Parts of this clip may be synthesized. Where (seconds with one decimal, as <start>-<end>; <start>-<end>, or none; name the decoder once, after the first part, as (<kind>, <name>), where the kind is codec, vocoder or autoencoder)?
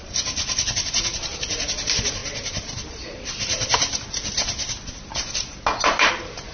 none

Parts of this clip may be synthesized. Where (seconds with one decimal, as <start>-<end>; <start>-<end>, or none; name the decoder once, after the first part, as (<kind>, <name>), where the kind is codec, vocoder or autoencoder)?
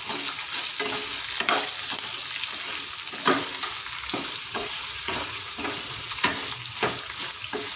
4.4-6.3 (vocoder, Vocos)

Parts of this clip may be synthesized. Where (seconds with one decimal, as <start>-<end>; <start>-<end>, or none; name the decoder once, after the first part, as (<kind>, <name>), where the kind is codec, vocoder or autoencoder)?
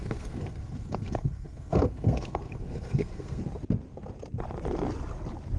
0.0-3.4 (codec, SNAC)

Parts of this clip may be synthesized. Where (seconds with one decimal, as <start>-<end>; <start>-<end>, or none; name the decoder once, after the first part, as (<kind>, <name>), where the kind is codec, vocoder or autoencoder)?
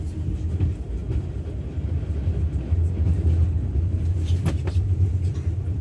none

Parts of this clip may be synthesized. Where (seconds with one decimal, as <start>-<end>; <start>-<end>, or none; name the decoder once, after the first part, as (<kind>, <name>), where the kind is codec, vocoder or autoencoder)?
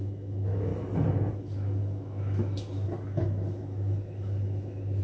0.0-0.7 (autoencoder, DAC-VAE); 1.3-5.0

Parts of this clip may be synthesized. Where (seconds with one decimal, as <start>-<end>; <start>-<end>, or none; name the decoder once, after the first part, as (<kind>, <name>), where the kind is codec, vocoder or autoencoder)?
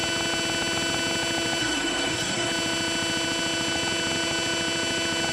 1.6-2.5 (codec, SNAC)